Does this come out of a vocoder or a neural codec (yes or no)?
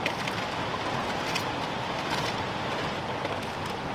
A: no